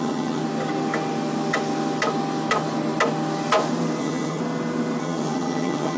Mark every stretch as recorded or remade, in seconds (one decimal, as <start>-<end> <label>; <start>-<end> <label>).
0.0-0.4 remade; 0.4-4.0 recorded; 4.0-4.4 remade; 4.4-5.0 recorded; 5.0-6.0 remade